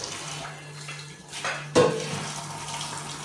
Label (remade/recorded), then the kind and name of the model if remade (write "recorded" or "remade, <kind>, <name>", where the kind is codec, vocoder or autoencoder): recorded